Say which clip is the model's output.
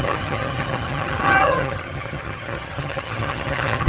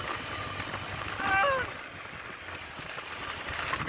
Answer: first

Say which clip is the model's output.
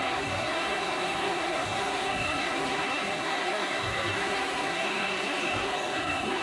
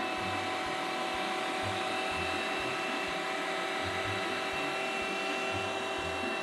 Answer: first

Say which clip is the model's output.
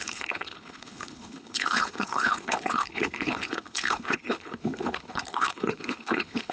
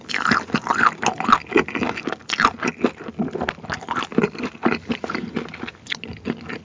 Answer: first